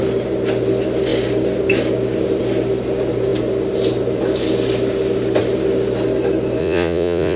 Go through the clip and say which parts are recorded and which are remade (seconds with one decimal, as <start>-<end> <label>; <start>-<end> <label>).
0.0-6.6 recorded; 6.6-7.4 remade